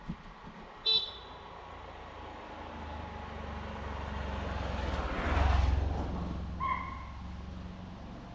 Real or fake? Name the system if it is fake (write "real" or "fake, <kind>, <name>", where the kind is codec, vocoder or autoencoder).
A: real